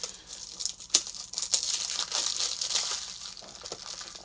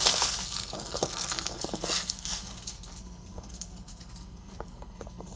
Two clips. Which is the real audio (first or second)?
first